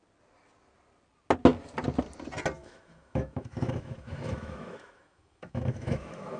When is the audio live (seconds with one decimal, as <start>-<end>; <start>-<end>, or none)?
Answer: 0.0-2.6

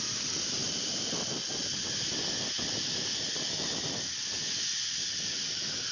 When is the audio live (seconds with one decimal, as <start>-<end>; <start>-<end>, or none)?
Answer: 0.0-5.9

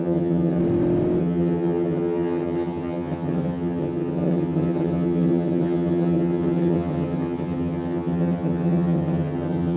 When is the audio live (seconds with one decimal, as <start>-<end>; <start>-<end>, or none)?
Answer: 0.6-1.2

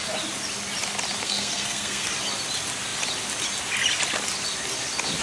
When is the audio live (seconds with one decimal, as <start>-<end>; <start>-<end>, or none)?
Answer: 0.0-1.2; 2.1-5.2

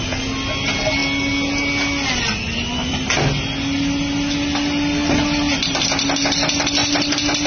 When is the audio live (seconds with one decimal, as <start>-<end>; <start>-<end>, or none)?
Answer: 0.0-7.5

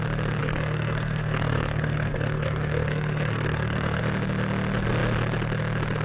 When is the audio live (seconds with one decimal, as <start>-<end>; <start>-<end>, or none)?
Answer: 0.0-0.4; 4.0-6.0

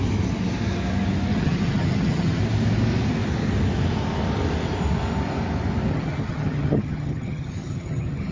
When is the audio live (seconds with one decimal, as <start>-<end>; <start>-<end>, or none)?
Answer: 0.0-1.3; 2.4-5.9